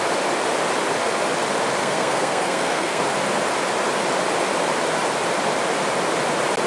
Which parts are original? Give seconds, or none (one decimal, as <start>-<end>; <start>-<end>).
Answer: 0.0-1.8; 3.0-6.7